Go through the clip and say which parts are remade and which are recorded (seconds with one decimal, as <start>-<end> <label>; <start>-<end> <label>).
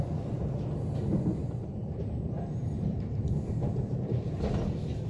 0.0-1.4 recorded; 1.4-4.5 remade; 4.5-5.1 recorded